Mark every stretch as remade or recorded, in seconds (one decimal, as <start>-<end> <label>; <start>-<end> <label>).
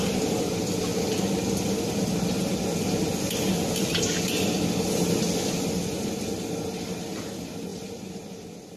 0.0-8.8 recorded